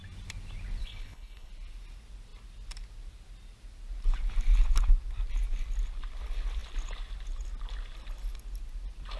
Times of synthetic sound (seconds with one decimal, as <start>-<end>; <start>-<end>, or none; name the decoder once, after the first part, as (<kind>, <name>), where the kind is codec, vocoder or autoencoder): 0.8-1.5 (codec, HILCodec)